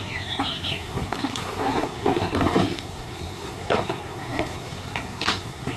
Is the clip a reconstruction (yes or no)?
yes